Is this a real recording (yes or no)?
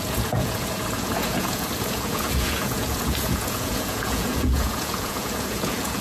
no